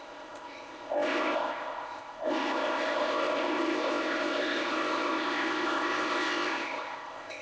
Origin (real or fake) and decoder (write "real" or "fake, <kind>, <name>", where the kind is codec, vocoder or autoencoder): fake, codec, ZipCodec